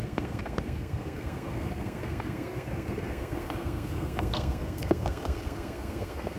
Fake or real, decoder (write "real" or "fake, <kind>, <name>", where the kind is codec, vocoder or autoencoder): fake, codec, SNAC